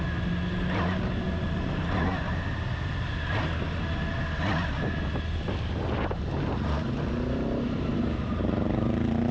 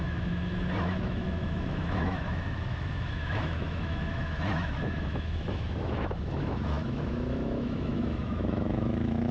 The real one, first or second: first